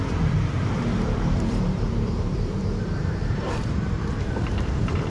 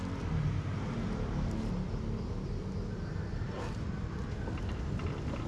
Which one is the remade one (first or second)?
first